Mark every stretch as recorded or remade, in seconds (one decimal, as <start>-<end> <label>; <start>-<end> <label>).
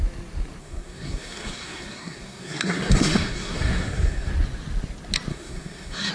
0.0-0.6 recorded; 0.6-4.3 remade; 4.3-5.3 recorded; 5.3-6.1 remade